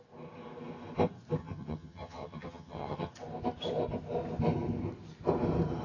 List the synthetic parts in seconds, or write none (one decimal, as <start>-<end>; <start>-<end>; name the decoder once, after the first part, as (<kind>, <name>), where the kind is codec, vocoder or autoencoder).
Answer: 1.4-3.1 (vocoder, HiFi-GAN)